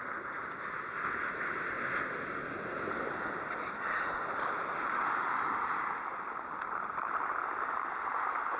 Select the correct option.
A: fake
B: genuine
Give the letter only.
B